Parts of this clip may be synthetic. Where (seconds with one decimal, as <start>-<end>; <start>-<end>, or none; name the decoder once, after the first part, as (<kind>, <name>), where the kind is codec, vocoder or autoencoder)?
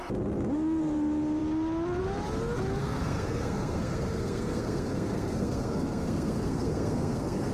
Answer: 2.8-7.5 (codec, SNAC)